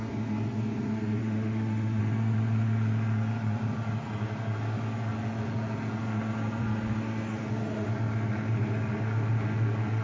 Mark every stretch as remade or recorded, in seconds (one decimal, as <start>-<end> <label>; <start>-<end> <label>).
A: 0.0-1.2 recorded; 1.2-2.0 remade; 2.0-7.4 recorded; 7.4-7.9 remade; 7.9-10.0 recorded

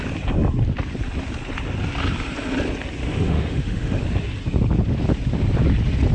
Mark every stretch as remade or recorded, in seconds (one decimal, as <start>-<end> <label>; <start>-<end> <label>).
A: 0.0-3.0 recorded; 3.0-4.0 remade; 4.0-6.1 recorded

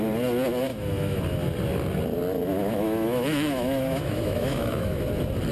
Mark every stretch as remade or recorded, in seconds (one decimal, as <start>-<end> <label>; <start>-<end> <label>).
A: 0.0-0.7 recorded; 0.7-1.2 remade; 1.2-2.5 recorded; 2.5-5.0 remade; 5.0-5.5 recorded

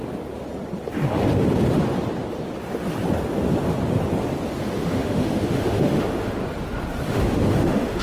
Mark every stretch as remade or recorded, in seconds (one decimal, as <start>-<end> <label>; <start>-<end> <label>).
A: 0.0-4.8 recorded; 4.8-6.4 remade; 6.4-7.1 recorded; 7.1-8.0 remade

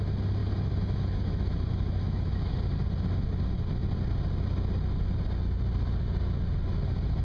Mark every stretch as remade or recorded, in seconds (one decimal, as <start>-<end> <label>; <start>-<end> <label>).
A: 0.0-0.4 recorded; 0.4-2.5 remade; 2.5-7.2 recorded

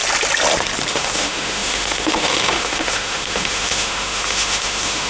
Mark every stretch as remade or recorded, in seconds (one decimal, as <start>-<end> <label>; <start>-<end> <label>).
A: 0.0-0.9 recorded; 0.9-5.1 remade

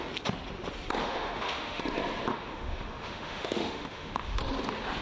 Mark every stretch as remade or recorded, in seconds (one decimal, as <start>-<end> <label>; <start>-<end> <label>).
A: 0.0-1.0 recorded; 1.0-1.8 remade; 1.8-2.3 recorded; 2.3-4.4 remade; 4.4-5.0 recorded

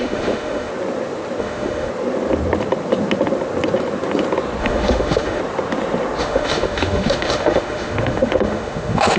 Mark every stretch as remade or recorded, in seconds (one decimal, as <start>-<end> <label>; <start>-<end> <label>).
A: 0.0-0.7 remade; 0.7-1.4 recorded; 1.4-1.9 remade; 1.9-4.6 recorded; 4.6-5.4 remade; 5.4-6.2 recorded; 6.2-9.2 remade